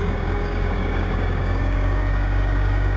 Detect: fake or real fake